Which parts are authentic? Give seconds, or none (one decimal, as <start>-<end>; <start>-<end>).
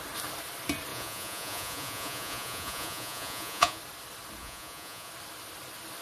0.0-0.9; 3.8-4.4; 5.1-6.0